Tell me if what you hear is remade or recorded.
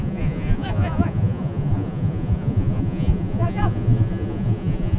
remade